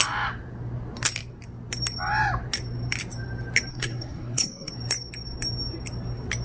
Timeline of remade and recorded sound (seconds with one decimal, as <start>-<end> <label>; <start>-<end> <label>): 0.0-3.7 recorded; 3.7-4.7 remade; 4.7-6.4 recorded